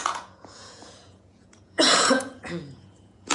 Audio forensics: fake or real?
fake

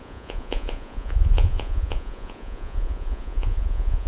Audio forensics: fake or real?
fake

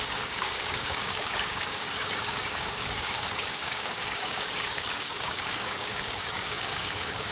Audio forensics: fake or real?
fake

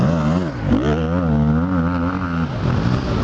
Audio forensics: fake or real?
real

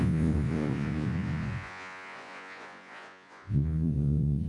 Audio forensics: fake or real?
fake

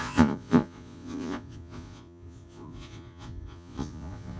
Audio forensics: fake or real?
fake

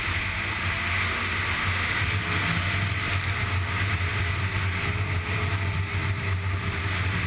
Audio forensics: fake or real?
real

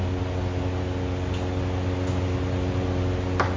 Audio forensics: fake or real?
real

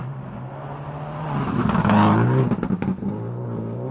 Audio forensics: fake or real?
real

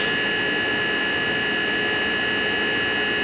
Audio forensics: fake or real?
real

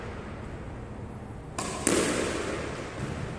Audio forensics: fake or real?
real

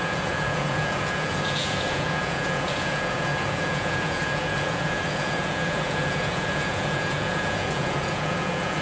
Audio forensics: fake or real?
fake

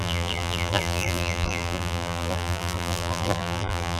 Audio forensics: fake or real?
fake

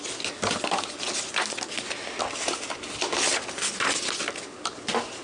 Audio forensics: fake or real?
real